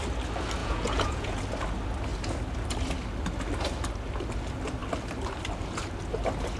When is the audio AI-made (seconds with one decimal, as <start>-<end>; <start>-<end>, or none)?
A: 0.6-1.4